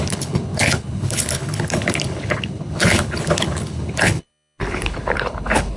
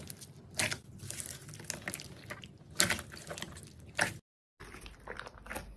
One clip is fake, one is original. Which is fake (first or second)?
first